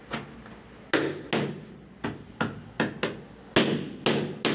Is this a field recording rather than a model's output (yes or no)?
yes